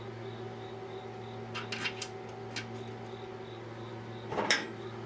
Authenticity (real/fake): real